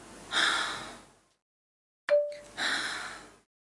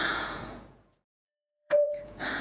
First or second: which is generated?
second